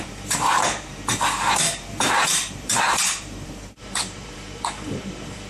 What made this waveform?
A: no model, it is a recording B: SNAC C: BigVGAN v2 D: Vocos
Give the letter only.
C